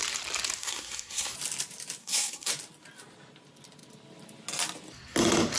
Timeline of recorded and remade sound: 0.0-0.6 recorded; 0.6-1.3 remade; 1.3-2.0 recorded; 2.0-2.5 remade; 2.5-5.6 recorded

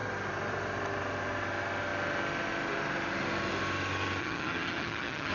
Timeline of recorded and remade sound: 0.0-4.2 recorded; 4.2-5.3 remade